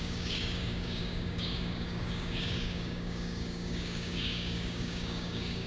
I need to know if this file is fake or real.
fake